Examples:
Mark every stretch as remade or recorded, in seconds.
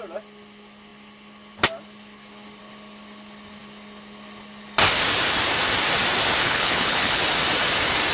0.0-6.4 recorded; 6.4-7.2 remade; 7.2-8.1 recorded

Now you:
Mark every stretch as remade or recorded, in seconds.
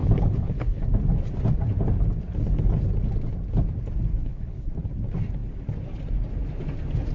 0.0-0.8 remade; 0.8-4.1 recorded; 4.1-4.7 remade; 4.7-7.1 recorded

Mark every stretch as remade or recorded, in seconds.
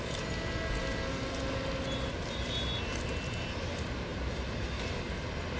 0.0-5.6 recorded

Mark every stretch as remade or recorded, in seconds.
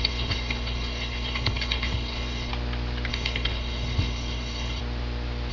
0.0-2.5 remade; 2.5-3.1 recorded; 3.1-4.8 remade; 4.8-5.5 recorded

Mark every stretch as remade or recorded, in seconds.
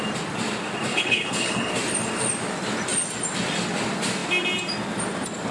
0.0-0.9 recorded; 0.9-1.7 remade; 1.7-5.5 recorded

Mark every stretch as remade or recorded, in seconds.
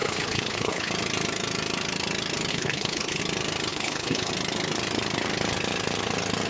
0.0-0.9 remade; 0.9-2.5 recorded; 2.5-3.2 remade; 3.2-3.7 recorded; 3.7-4.3 remade; 4.3-6.5 recorded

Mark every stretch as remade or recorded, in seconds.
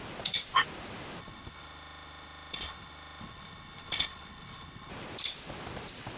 0.0-1.2 recorded; 1.2-4.9 remade; 4.9-6.2 recorded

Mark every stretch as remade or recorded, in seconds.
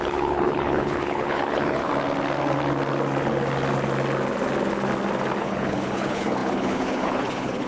0.0-1.9 remade; 1.9-5.4 recorded; 5.4-7.7 remade